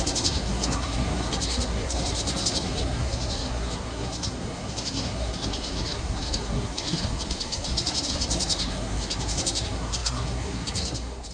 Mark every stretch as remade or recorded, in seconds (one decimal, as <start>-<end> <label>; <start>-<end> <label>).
0.0-11.3 remade